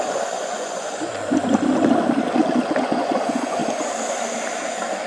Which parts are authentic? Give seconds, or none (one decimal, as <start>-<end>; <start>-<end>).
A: 1.3-2.8; 3.6-5.1